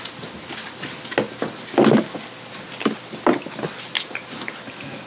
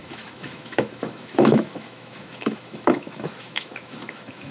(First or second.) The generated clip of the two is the second